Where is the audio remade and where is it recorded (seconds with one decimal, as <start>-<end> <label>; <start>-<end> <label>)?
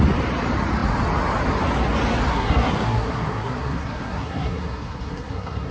0.0-2.3 recorded; 2.3-5.7 remade